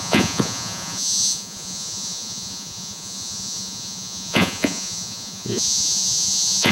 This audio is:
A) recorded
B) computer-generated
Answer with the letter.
B